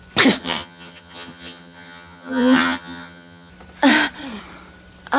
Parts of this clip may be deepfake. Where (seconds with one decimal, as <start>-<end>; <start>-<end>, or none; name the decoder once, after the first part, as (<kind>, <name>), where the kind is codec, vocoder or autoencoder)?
0.4-3.5 (vocoder, HiFi-GAN)